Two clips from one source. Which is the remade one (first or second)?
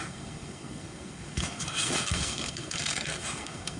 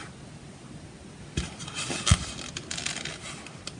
first